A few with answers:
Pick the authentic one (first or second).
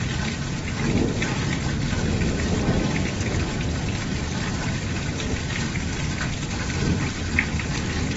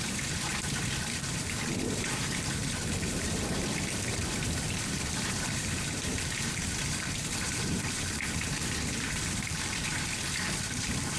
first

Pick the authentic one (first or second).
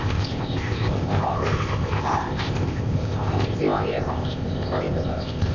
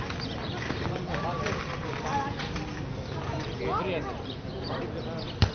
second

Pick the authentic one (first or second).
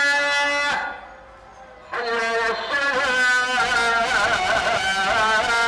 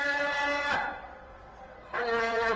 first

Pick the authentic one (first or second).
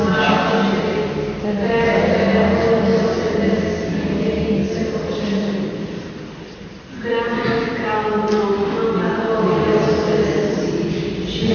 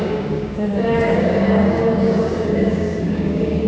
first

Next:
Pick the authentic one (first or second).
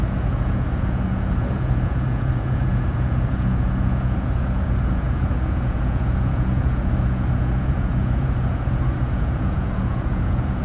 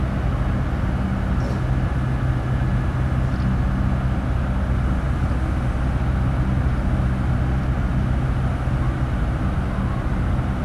second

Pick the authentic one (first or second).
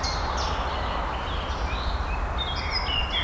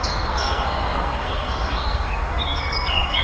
first